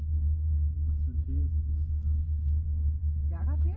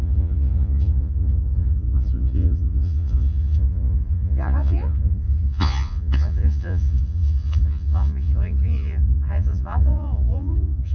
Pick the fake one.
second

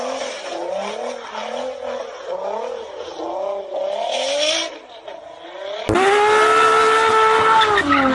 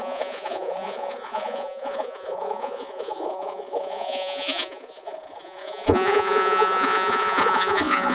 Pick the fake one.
second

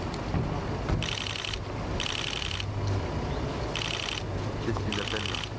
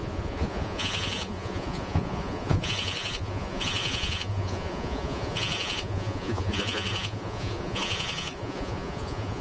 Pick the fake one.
second